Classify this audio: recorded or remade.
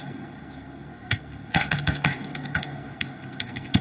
remade